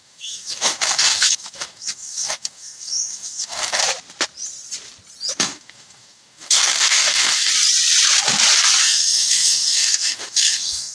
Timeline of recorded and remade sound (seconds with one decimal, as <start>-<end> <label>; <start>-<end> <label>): 0.0-3.8 remade; 3.8-5.4 recorded; 5.4-7.5 remade; 7.5-8.8 recorded; 8.8-10.9 remade